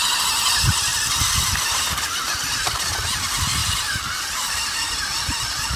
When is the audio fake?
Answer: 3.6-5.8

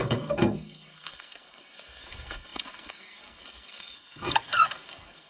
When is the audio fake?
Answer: 0.0-5.3

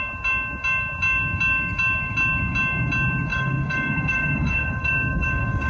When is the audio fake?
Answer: 3.3-5.7

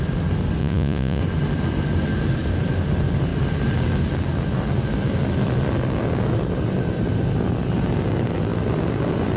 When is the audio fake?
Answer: 0.6-1.2